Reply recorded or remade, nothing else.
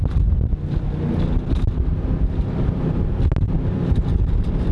recorded